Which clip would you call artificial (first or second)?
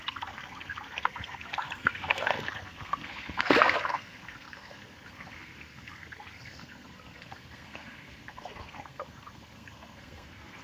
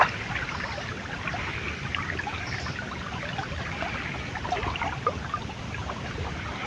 first